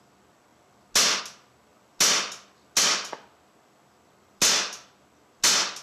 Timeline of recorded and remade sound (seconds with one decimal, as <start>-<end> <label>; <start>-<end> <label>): 0.0-5.8 recorded